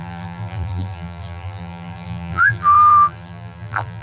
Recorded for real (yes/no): no